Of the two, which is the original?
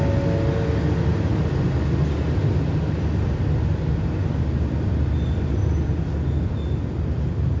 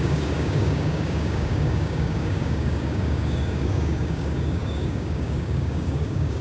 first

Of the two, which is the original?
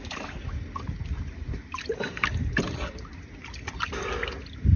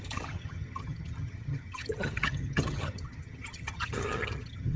first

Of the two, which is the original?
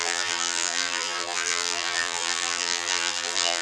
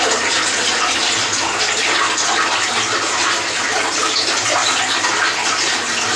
second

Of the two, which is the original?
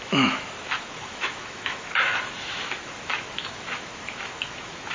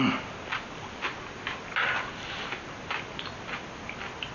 second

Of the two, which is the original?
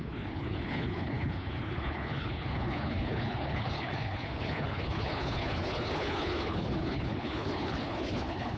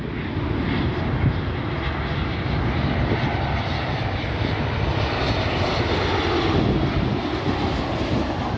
second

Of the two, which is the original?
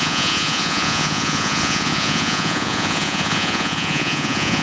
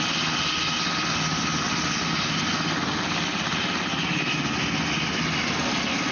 second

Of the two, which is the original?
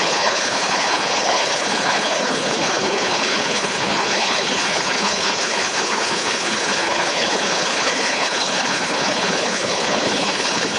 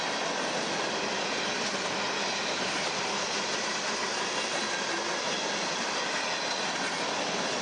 second